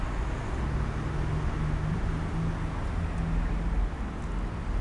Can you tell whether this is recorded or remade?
recorded